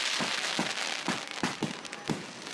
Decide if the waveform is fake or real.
real